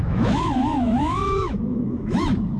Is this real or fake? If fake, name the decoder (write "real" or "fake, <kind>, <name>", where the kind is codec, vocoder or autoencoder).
fake, autoencoder, DAC-VAE